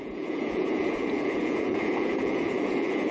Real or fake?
fake